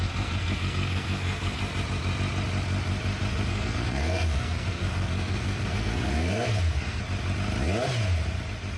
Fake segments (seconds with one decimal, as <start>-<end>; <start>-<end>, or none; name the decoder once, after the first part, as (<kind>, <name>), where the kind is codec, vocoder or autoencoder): 0.0-1.6 (codec, SNAC); 3.5-7.0